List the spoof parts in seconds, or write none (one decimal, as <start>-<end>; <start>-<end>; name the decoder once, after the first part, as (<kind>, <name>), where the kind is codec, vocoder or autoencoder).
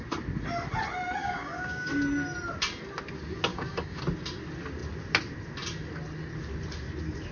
1.2-1.9 (codec, DAC); 3.5-4.0